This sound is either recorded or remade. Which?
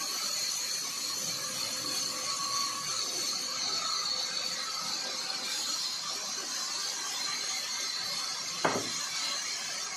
recorded